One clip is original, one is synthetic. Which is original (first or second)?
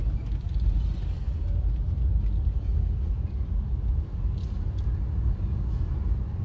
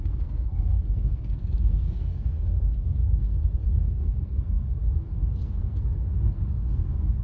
first